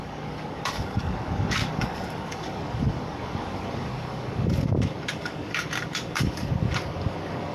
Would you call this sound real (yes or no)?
no